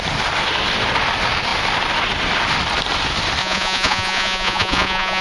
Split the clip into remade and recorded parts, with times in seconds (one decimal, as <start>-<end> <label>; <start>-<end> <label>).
0.0-3.4 recorded; 3.4-5.2 remade